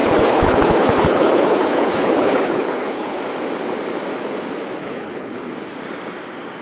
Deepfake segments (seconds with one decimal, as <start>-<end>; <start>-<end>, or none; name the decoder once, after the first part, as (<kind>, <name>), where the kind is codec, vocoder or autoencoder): 0.0-3.2 (codec, HILCodec); 4.8-5.5